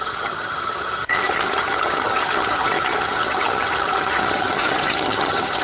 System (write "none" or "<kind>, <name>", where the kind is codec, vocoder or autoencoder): vocoder, HiFi-GAN